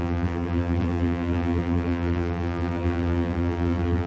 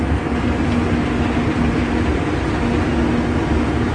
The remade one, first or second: first